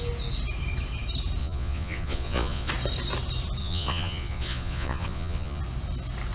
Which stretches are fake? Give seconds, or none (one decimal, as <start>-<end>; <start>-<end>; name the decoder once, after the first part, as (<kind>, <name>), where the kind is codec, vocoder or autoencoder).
1.4-2.7 (vocoder, Vocos); 3.6-5.6